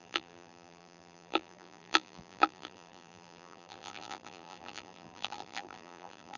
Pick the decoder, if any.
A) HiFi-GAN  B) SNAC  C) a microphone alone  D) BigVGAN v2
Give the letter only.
D